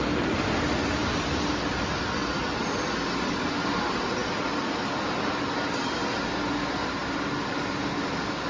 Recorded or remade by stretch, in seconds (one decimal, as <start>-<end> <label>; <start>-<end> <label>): 0.0-8.5 recorded